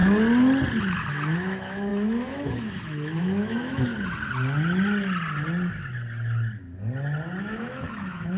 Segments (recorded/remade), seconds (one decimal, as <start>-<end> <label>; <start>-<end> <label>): 0.0-1.1 recorded; 1.1-3.9 remade; 3.9-7.4 recorded; 7.4-8.4 remade

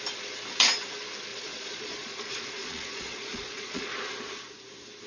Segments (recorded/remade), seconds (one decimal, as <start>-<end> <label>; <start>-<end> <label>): 0.0-1.3 recorded; 1.3-3.9 remade; 3.9-5.1 recorded

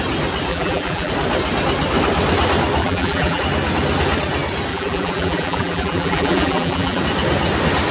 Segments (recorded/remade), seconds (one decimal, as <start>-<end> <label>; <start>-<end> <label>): 0.0-0.5 recorded; 0.5-1.1 remade; 1.1-2.8 recorded; 2.8-3.4 remade; 3.4-4.7 recorded; 4.7-7.0 remade; 7.0-7.9 recorded

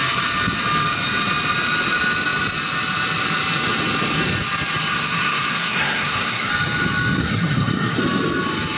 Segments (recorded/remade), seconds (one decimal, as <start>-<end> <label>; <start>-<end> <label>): 0.0-4.9 recorded; 4.9-6.5 remade; 6.5-7.2 recorded; 7.2-8.0 remade; 8.0-8.8 recorded